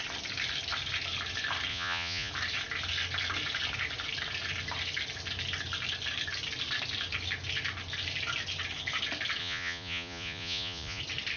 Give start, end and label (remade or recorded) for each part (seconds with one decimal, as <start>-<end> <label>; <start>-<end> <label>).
0.0-1.7 recorded; 1.7-2.3 remade; 2.3-9.4 recorded; 9.4-11.0 remade; 11.0-11.4 recorded